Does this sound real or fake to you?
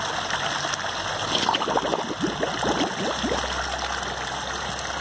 real